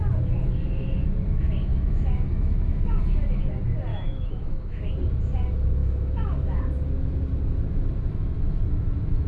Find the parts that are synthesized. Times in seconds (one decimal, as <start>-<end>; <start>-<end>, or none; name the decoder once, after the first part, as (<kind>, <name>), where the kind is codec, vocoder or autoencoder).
1.7-3.0 (autoencoder, DAC-VAE); 3.9-4.9; 5.8-6.6